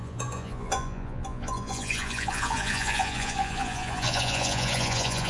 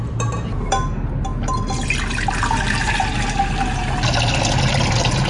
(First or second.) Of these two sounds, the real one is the second